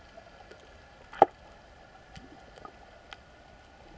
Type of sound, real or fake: real